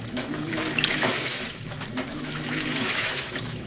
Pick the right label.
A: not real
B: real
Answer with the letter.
A